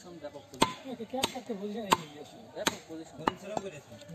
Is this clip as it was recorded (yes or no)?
yes